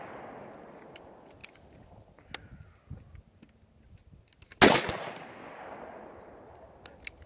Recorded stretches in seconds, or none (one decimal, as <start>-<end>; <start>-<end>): 0.0-7.3